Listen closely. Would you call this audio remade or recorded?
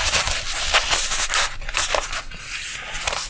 recorded